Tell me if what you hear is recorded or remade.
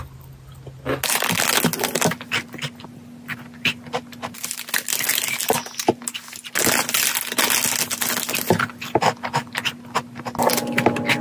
recorded